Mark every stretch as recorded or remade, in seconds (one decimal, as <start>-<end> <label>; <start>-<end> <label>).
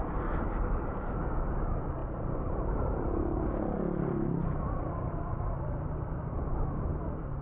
0.0-7.4 recorded